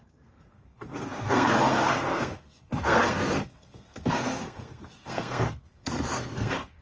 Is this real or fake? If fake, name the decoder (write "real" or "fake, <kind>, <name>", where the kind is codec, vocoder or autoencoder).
fake, codec, SNAC